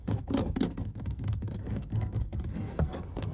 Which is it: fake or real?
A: fake